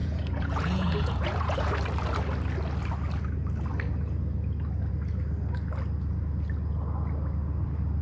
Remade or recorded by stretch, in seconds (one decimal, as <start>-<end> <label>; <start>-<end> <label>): 0.0-1.7 remade; 1.7-8.0 recorded